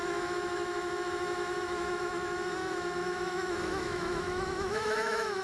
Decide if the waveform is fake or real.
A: fake